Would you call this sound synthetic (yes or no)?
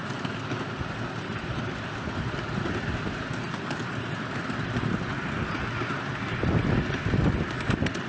no